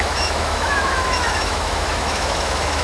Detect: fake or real fake